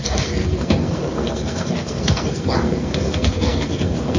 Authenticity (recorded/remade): remade